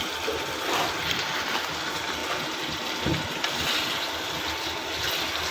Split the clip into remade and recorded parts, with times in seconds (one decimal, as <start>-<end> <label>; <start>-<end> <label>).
0.0-5.5 recorded